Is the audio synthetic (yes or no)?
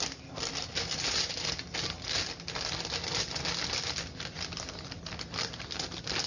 no